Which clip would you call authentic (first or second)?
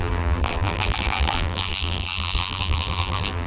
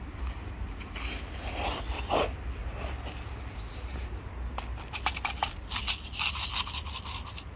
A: second